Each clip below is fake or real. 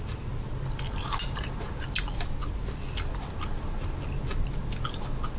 real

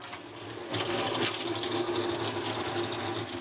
real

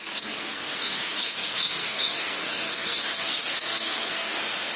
fake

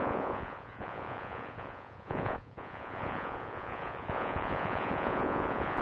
fake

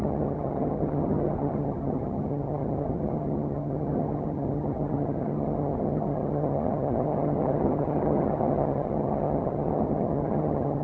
fake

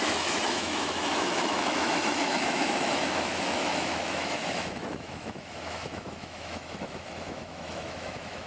fake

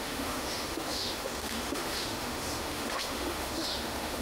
fake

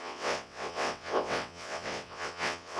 fake